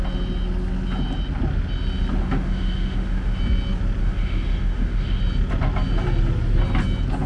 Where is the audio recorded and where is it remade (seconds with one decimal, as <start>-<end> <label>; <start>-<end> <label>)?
0.0-2.2 recorded; 2.2-3.4 remade; 3.4-4.0 recorded; 4.0-5.2 remade; 5.2-7.3 recorded